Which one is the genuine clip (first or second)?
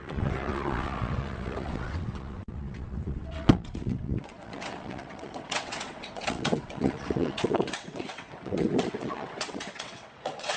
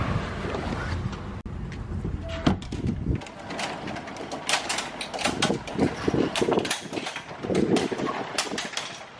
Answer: second